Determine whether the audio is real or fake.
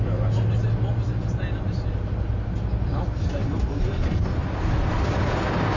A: real